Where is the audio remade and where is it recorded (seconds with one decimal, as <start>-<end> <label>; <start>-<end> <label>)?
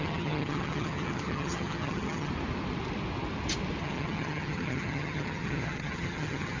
0.0-2.3 remade; 2.3-3.8 recorded; 3.8-6.6 remade